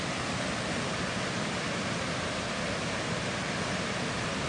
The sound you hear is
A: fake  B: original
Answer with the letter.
B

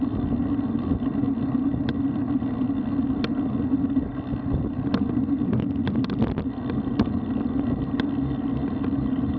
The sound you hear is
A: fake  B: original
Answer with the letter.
B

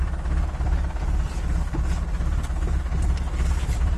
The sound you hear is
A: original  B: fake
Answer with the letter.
A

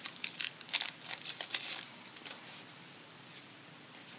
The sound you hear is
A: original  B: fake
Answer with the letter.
A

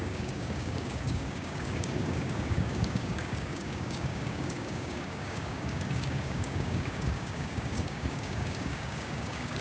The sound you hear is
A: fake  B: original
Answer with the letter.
A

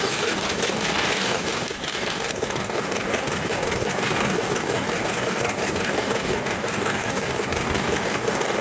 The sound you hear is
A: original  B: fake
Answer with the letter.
B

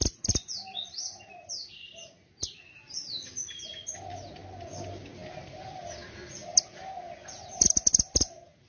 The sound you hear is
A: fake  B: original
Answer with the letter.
B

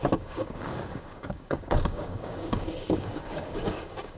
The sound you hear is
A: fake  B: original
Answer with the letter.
A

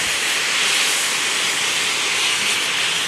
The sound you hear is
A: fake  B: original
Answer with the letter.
B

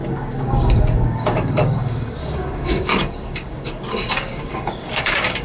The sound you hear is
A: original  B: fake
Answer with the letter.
B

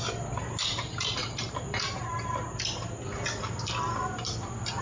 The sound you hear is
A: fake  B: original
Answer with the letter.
B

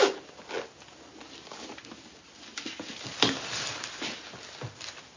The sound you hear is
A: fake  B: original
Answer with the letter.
B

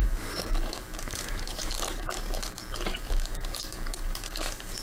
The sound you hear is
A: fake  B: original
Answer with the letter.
A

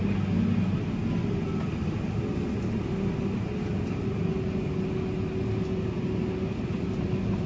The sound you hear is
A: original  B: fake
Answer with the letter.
A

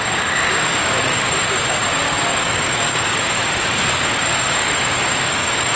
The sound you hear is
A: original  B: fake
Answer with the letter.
B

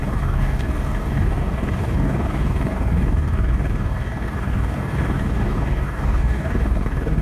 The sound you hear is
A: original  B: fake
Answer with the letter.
B